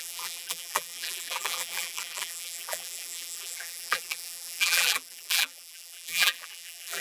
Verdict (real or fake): fake